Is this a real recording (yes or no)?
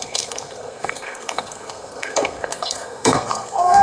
no